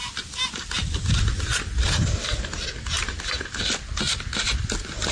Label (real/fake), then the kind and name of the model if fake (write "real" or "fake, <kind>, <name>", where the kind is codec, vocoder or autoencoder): real